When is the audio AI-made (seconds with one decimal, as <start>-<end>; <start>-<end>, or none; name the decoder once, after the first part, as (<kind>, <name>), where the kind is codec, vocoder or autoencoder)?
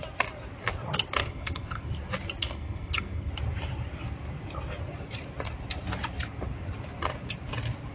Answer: 1.2-1.9 (codec, SNAC); 2.4-3.3